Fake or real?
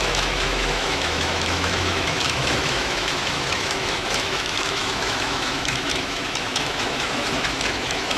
fake